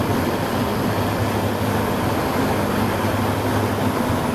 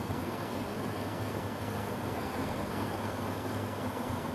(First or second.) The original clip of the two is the first